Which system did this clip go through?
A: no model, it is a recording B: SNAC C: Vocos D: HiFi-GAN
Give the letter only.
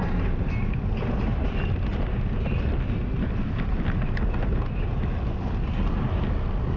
A